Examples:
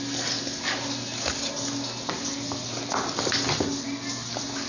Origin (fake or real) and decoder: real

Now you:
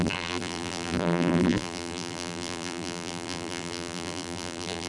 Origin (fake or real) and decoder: fake, vocoder, BigVGAN v2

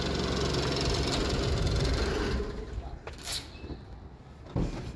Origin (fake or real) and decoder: real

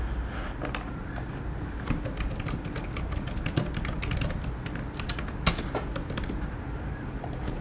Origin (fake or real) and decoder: real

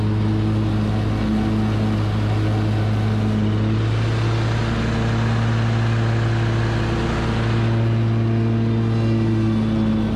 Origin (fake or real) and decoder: real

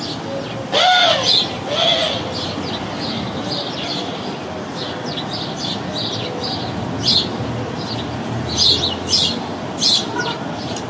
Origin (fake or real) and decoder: real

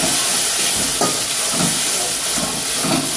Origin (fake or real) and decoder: real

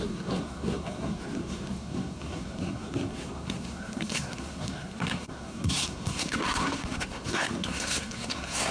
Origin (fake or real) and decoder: fake, codec, SNAC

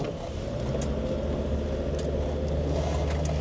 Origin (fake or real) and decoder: real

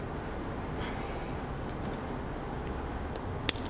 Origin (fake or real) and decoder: real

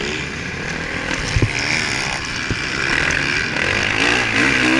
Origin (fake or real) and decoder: real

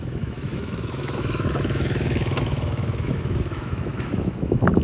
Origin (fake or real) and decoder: fake, autoencoder, DAC-VAE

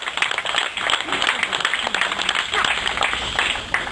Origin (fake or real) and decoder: real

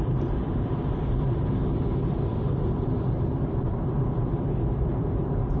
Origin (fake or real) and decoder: fake, vocoder, BigVGAN v2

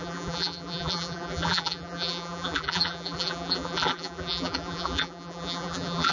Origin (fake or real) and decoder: fake, vocoder, BigVGAN v2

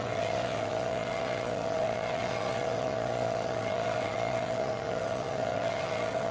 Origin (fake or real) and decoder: fake, vocoder, WaveNeXt